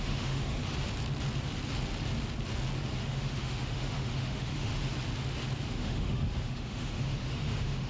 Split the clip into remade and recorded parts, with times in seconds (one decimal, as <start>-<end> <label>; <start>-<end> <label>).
0.0-0.6 remade; 0.6-3.0 recorded; 3.0-4.7 remade; 4.7-5.7 recorded; 5.7-7.9 remade